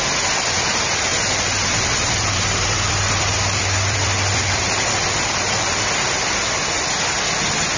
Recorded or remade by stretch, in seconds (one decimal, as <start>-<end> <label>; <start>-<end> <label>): 0.0-1.1 recorded; 1.1-5.8 remade; 5.8-7.8 recorded